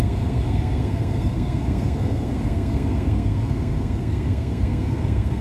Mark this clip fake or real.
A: fake